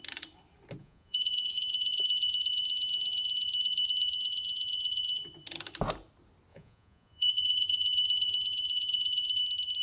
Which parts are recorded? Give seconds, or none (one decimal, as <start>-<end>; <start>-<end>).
0.0-0.8; 5.2-6.5; 9.4-9.8